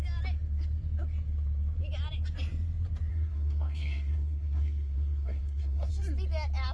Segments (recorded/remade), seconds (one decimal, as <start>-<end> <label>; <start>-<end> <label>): 0.0-3.1 recorded; 3.1-5.9 remade; 5.9-6.7 recorded